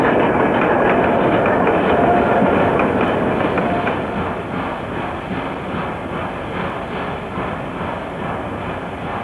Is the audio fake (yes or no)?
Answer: no